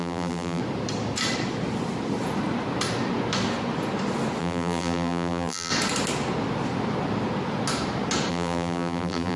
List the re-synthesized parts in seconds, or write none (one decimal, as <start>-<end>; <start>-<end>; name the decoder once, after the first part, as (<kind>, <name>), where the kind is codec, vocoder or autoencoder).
0.0-0.6 (vocoder, BigVGAN v2); 4.4-5.7; 8.3-9.4